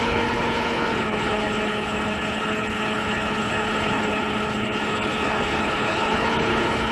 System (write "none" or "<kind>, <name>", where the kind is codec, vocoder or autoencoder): codec, HILCodec